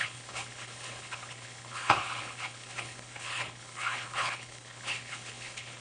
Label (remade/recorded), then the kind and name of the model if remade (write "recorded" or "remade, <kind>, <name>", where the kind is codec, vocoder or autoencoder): remade, codec, HILCodec